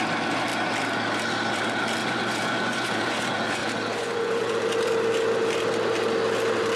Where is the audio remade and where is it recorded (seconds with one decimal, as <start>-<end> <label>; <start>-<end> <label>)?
0.0-2.0 recorded; 2.0-4.6 remade; 4.6-6.8 recorded